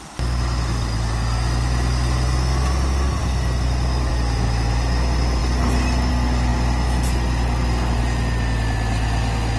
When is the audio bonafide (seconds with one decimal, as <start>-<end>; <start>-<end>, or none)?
0.0-9.6